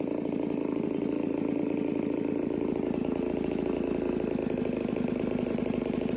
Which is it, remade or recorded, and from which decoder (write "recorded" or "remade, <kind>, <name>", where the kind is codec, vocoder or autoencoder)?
recorded